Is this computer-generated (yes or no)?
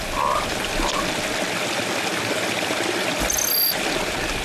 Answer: no